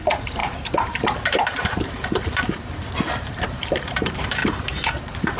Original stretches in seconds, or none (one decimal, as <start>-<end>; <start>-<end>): 4.4-5.0